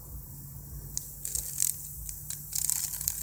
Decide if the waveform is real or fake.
real